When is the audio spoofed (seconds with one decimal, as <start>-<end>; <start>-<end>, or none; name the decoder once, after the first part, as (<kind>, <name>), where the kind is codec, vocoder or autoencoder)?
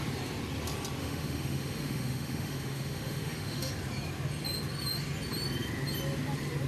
1.0-3.7 (autoencoder, DAC-VAE)